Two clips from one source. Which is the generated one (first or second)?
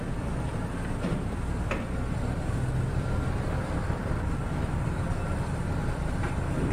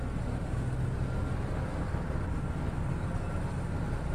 first